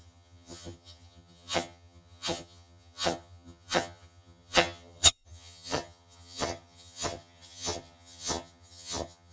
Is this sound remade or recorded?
remade